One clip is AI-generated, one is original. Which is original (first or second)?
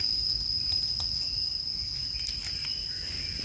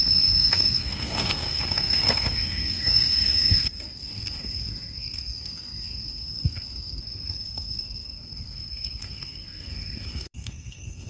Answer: first